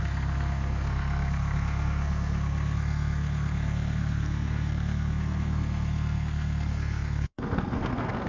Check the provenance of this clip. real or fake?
fake